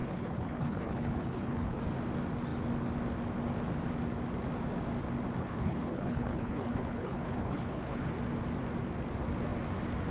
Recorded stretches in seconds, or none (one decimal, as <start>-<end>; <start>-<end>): 1.8-5.4; 8.1-10.1